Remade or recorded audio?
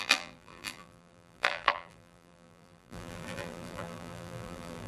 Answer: remade